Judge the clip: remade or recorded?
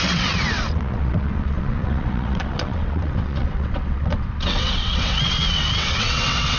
remade